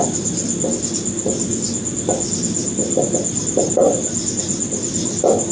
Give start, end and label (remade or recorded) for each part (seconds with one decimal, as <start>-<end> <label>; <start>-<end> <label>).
0.0-5.5 recorded